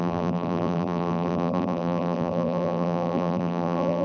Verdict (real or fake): fake